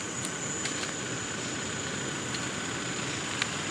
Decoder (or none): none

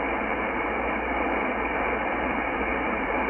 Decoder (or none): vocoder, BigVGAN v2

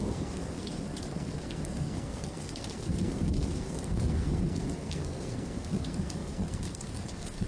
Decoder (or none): codec, SNAC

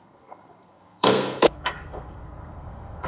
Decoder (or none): codec, SNAC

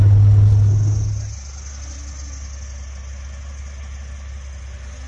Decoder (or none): none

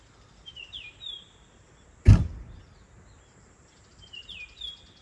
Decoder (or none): vocoder, BigVGAN v2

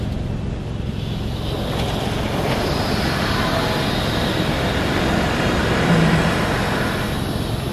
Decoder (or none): none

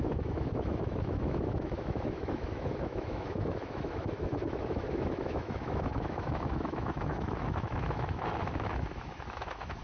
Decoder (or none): autoencoder, DAC-VAE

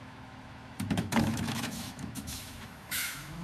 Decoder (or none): autoencoder, DAC-VAE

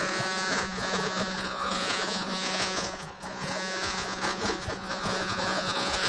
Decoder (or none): vocoder, Vocos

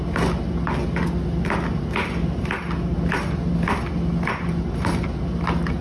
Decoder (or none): none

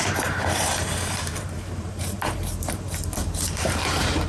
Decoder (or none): vocoder, BigVGAN v2